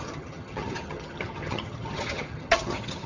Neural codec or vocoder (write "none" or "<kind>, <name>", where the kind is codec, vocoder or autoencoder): vocoder, HiFi-GAN